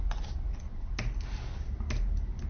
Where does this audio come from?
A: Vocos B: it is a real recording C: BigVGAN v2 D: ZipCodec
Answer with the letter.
B